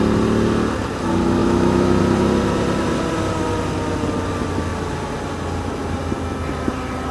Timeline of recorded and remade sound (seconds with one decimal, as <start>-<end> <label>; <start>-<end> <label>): 0.0-1.4 recorded; 1.4-2.0 remade; 2.0-7.1 recorded

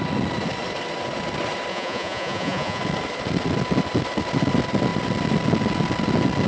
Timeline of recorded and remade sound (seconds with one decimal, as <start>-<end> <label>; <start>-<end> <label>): 0.0-1.7 recorded; 1.7-2.8 remade; 2.8-6.5 recorded

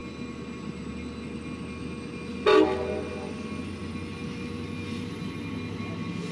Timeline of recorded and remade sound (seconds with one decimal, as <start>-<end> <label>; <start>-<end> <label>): 0.0-6.3 recorded

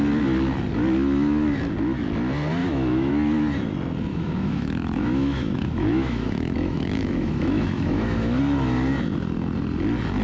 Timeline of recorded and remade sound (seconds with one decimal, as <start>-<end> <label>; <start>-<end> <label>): 0.0-2.6 recorded; 2.6-3.1 remade; 3.1-4.1 recorded; 4.1-8.4 remade; 8.4-10.2 recorded

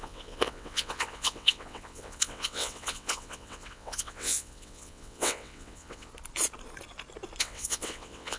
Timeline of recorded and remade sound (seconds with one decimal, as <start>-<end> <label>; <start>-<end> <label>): 0.0-6.1 remade; 6.1-7.4 recorded; 7.4-8.4 remade

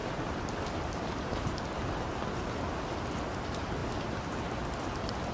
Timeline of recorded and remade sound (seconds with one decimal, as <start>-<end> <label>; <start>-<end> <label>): 0.0-3.2 remade; 3.2-3.8 recorded; 3.8-5.3 remade